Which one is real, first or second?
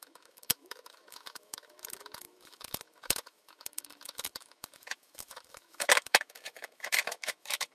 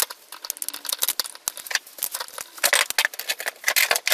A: second